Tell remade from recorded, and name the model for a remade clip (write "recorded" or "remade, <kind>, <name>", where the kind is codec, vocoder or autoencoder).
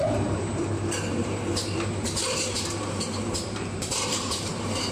remade, vocoder, BigVGAN v2